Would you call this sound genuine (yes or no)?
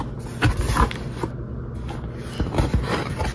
yes